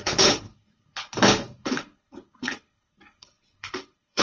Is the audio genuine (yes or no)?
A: no